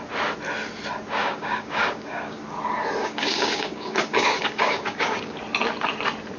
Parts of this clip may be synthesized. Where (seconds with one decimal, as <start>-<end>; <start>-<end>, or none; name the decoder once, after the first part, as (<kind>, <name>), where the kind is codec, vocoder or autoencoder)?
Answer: 1.2-2.4 (codec, DAC); 3.0-5.4